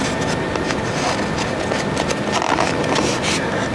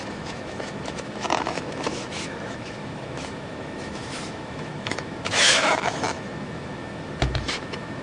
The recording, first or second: first